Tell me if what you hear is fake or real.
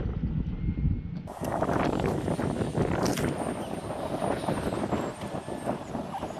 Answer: real